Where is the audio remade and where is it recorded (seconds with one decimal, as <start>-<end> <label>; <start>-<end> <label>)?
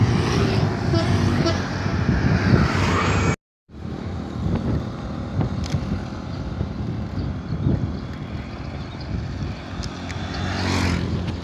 0.0-11.4 recorded